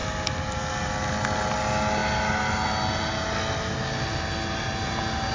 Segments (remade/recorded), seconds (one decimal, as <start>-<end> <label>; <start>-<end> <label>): 0.0-5.3 recorded